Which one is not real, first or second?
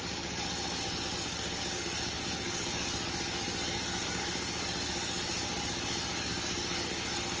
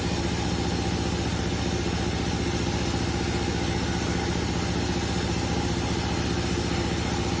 first